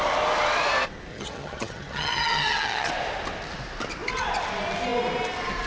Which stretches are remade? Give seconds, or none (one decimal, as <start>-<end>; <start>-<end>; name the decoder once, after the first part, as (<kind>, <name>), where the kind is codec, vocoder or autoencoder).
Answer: 1.1-2.9 (vocoder, HiFi-GAN)